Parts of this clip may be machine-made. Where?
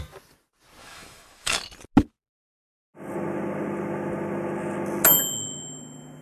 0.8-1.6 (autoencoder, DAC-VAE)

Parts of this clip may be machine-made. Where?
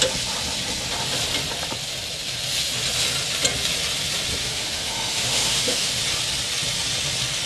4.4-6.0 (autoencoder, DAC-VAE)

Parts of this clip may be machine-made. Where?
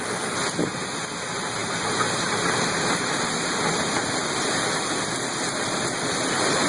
none